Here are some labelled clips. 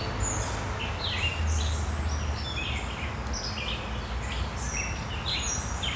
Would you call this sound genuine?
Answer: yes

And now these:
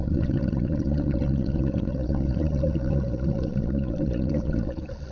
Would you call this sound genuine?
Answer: no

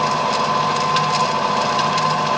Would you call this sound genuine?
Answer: yes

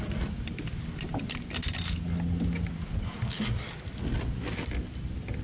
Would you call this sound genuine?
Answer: yes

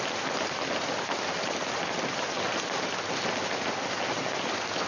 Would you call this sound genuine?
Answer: yes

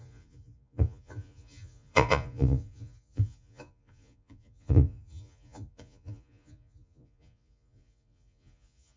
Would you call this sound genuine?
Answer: no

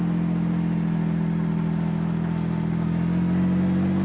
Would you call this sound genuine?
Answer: yes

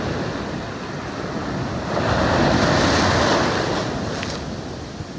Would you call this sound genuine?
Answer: yes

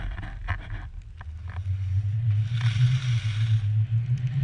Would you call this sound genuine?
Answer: yes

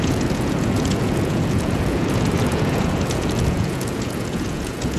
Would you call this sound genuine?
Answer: no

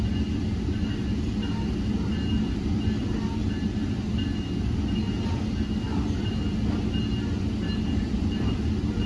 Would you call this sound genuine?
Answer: yes